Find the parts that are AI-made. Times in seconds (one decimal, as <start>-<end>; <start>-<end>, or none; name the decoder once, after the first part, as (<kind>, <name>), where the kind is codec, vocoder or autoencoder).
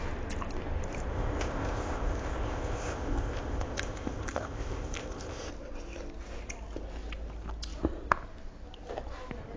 1.1-5.5 (codec, ZipCodec)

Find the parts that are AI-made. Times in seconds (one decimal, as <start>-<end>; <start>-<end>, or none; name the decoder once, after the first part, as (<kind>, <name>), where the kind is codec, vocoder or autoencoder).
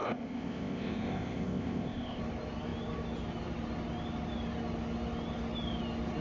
0.0-2.2 (codec, ZipCodec)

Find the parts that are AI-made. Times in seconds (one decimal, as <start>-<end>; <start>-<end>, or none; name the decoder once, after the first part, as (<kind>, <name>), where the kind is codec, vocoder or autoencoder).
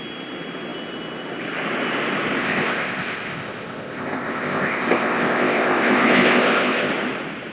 2.4-6.9 (codec, ZipCodec)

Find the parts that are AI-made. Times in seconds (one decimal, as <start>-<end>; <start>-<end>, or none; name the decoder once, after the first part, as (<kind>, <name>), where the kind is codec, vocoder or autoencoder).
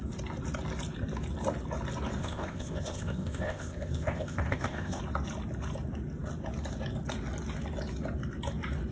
2.2-5.0 (codec, ZipCodec)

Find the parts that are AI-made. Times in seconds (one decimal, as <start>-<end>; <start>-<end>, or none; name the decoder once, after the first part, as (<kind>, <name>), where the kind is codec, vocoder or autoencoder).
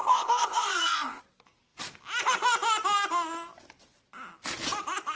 0.0-1.2 (codec, ZipCodec)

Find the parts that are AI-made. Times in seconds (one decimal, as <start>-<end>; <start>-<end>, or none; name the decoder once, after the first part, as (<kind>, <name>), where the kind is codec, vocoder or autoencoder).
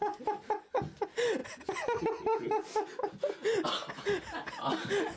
none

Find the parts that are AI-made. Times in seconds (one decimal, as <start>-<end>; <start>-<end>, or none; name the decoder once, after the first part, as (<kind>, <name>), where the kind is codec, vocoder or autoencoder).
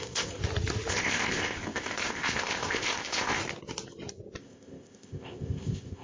0.0-0.4 (codec, ZipCodec); 0.9-3.4; 4.4-6.0